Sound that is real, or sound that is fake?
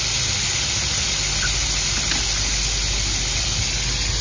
real